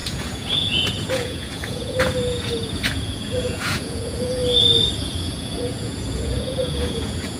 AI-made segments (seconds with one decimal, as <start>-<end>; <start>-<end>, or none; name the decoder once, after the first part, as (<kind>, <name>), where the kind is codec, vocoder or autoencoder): 0.0-4.4 (vocoder, Vocos); 5.0-7.4